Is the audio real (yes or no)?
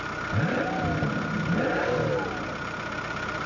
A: no